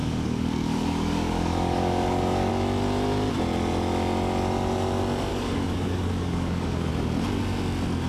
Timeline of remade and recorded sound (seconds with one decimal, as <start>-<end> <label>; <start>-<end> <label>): 0.0-2.5 remade; 2.5-5.3 recorded; 5.3-6.9 remade; 6.9-8.1 recorded

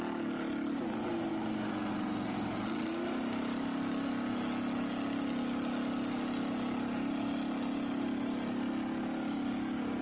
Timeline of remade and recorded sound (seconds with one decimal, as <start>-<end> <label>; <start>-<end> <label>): 0.0-10.0 recorded

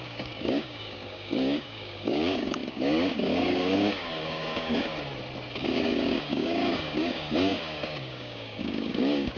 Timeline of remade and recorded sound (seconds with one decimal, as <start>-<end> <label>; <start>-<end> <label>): 0.0-4.9 remade; 4.9-5.5 recorded; 5.5-9.4 remade

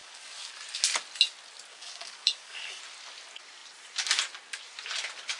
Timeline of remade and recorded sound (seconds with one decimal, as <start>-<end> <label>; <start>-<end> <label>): 0.0-0.5 remade; 0.5-1.7 recorded; 1.7-2.8 remade; 2.8-5.4 recorded